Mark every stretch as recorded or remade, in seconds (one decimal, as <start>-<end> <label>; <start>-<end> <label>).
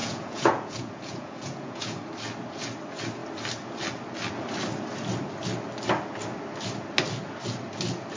0.0-2.0 remade; 2.0-8.2 recorded